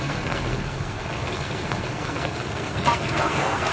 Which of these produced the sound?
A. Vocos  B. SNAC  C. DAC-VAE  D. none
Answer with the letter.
B